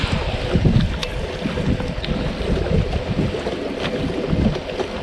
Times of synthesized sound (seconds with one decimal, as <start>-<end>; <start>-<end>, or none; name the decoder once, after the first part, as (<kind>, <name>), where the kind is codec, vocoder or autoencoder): none